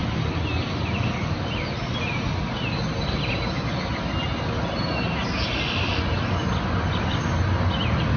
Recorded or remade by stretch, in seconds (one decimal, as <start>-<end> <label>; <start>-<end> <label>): 0.0-8.2 recorded